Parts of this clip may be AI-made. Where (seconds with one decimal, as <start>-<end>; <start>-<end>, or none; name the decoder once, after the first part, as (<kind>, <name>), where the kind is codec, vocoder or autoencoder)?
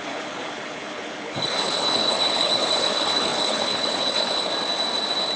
0.0-4.5 (codec, HILCodec)